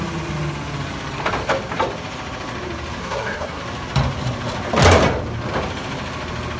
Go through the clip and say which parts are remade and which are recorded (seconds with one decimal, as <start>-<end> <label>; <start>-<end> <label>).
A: 0.0-3.0 recorded; 3.0-3.6 remade; 3.6-6.6 recorded